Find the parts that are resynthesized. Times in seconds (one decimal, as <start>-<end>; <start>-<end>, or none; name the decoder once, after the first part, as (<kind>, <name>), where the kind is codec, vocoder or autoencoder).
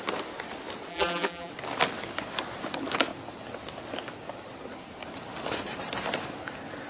0.9-1.5 (vocoder, BigVGAN v2)